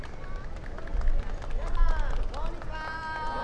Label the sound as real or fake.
real